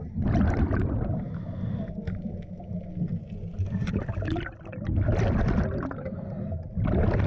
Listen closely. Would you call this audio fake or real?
real